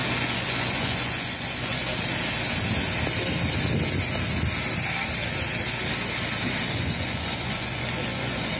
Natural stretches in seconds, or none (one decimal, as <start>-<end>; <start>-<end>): 1.9-6.7